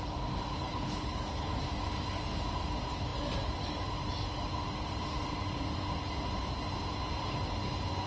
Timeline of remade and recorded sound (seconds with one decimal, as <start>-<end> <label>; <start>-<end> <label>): 0.0-0.6 recorded; 0.6-1.6 remade; 1.6-8.1 recorded